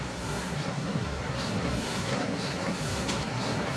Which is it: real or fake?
fake